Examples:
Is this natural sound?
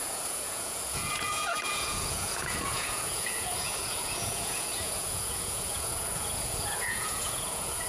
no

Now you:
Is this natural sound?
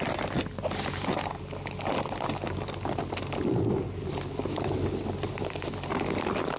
yes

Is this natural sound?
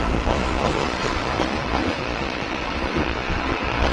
no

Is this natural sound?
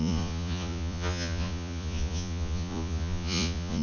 no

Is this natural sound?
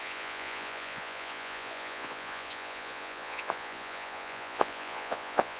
no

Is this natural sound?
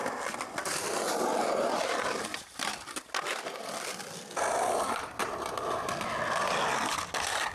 yes